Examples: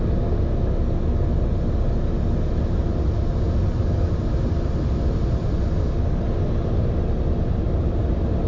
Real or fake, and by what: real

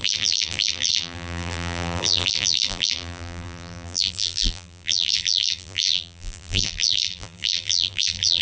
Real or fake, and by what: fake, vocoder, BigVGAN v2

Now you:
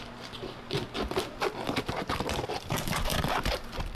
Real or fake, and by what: fake, vocoder, BigVGAN v2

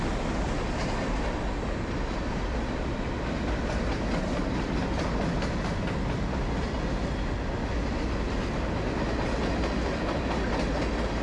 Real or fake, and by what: real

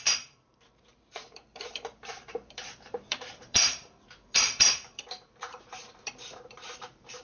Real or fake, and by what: fake, vocoder, BigVGAN v2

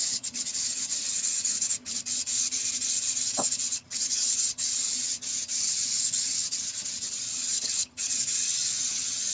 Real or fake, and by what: fake, vocoder, HiFi-GAN